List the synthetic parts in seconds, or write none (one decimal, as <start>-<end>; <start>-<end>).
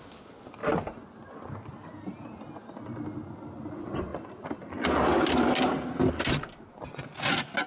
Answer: none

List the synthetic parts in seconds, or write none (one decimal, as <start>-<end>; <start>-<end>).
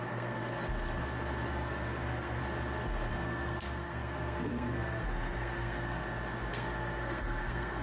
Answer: 0.0-0.4; 1.5-2.4; 3.1-6.0; 6.5-7.8